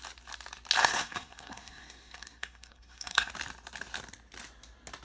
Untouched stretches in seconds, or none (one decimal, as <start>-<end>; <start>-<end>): 0.0-0.8; 3.3-5.0